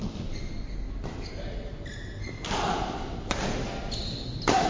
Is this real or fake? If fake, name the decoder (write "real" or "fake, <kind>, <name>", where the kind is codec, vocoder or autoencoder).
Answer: real